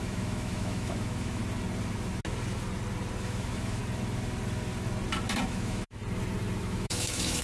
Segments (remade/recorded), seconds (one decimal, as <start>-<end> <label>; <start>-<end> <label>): 0.0-1.4 remade; 1.4-3.2 recorded; 3.2-3.8 remade; 3.8-5.5 recorded; 5.5-6.0 remade; 6.0-6.6 recorded; 6.6-7.4 remade